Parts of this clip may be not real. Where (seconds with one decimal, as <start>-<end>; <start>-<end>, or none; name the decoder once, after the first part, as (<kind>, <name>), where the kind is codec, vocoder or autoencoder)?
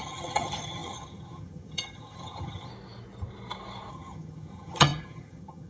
0.0-2.7 (vocoder, HiFi-GAN); 3.9-5.7